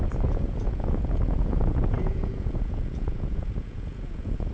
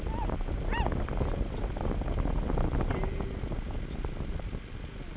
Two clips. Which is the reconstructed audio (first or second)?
first